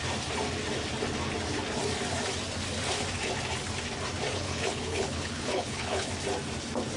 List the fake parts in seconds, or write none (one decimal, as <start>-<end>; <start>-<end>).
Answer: 4.3-6.1